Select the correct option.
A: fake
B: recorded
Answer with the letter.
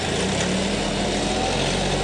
B